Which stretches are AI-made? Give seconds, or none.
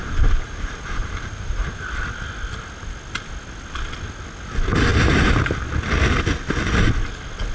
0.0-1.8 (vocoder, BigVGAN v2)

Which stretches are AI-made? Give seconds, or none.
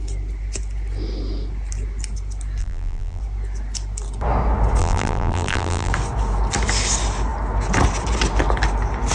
2.6-3.2 (vocoder, BigVGAN v2); 4.8-5.9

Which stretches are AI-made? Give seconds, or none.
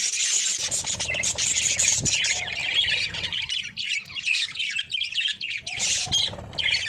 0.0-0.5 (vocoder, BigVGAN v2); 1.9-6.9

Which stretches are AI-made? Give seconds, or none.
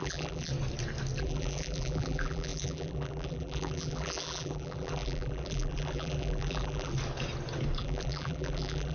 0.0-0.5 (vocoder, BigVGAN v2); 1.2-6.9; 7.8-8.9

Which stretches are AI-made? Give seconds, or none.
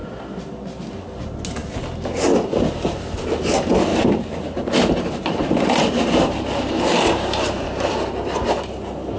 3.9-7.9 (vocoder, BigVGAN v2)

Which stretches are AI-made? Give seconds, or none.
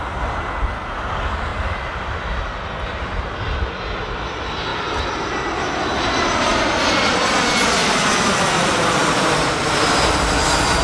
1.5-2.2 (vocoder, BigVGAN v2); 9.0-9.7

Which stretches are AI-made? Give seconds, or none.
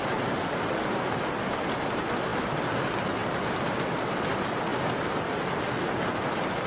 3.2-4.2 (vocoder, BigVGAN v2); 4.7-6.1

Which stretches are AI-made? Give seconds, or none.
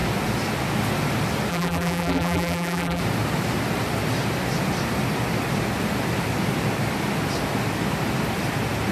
1.5-3.0 (vocoder, BigVGAN v2)